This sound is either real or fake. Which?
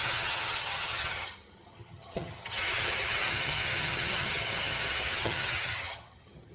fake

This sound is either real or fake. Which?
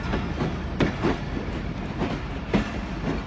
real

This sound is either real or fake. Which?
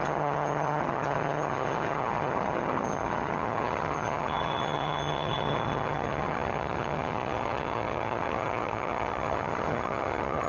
fake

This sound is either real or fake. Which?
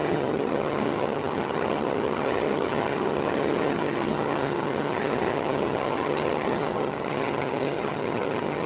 fake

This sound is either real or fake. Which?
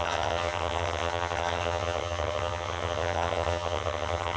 fake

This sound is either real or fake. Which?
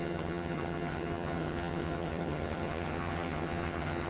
fake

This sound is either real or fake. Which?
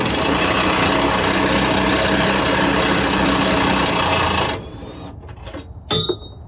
real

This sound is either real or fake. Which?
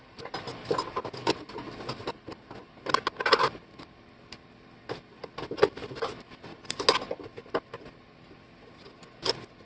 real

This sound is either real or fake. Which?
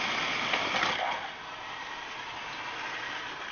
real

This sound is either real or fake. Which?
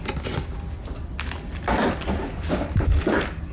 real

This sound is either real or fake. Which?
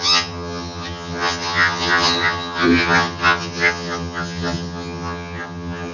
fake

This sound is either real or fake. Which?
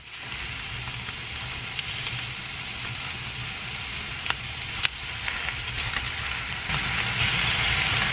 real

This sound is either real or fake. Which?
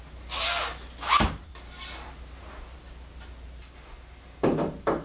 real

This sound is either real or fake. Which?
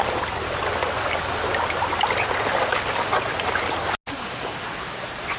real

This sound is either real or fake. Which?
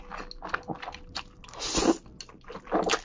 real